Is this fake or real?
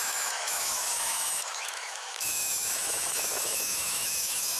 fake